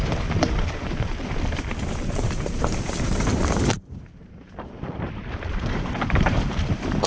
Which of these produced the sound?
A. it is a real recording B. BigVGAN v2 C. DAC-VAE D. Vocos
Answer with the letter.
B